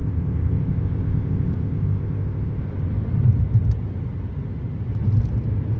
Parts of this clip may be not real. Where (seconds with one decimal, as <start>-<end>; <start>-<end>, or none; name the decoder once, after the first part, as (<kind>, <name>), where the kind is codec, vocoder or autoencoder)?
0.0-2.6 (codec, ZipCodec)